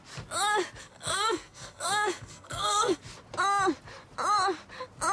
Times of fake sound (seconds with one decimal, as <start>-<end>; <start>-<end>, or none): 0.8-3.0